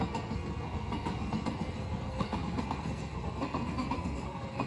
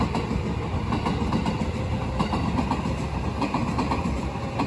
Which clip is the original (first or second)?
second